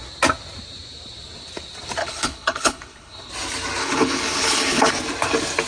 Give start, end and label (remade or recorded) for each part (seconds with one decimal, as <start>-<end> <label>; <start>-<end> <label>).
0.0-2.0 recorded; 2.0-3.3 remade; 3.3-3.8 recorded; 3.8-4.9 remade; 4.9-5.7 recorded